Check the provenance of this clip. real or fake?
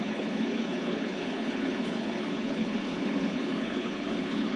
fake